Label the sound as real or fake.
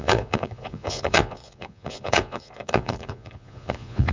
fake